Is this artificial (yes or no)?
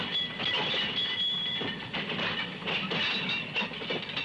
no